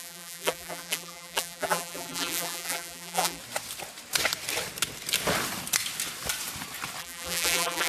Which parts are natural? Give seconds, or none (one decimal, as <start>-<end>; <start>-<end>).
3.4-7.0